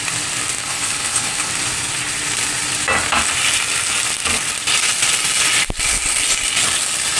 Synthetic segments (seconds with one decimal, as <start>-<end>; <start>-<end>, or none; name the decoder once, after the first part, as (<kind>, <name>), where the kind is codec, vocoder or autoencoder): 0.6-1.5 (codec, HILCodec)